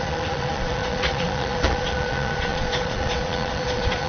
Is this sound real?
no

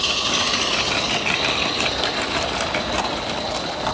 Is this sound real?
yes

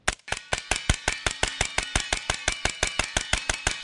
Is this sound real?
yes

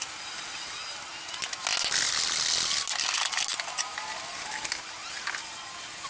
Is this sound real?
yes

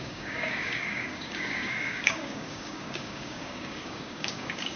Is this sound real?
no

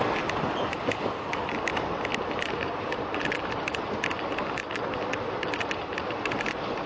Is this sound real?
yes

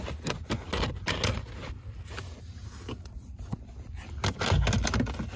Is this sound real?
yes